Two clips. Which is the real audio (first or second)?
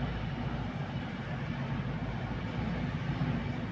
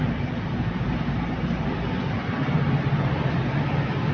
first